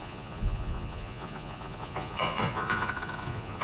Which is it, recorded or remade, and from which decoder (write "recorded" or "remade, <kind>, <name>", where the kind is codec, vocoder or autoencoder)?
remade, vocoder, Vocos